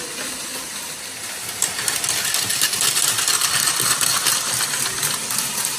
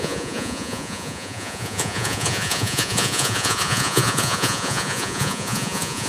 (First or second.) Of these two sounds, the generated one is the second